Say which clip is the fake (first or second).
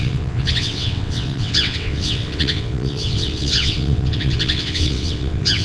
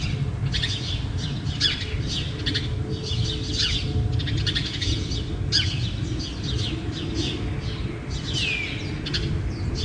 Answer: first